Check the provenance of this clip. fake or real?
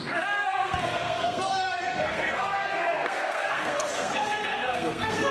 fake